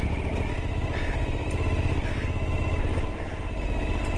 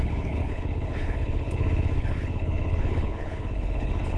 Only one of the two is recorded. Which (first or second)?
first